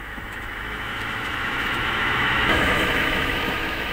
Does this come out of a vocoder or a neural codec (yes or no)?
yes